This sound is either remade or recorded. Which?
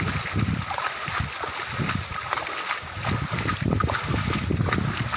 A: recorded